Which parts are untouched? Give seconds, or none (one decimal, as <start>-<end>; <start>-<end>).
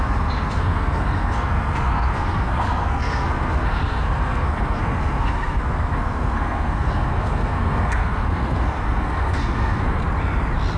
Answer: 10.0-10.8